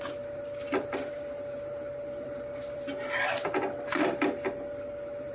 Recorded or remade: remade